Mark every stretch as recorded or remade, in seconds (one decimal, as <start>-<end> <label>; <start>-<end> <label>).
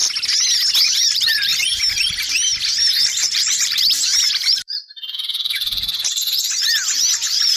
0.0-0.8 recorded; 0.8-1.5 remade; 1.5-2.9 recorded; 2.9-7.6 remade